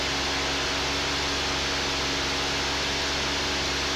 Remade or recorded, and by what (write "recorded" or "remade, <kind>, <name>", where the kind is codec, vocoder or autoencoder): recorded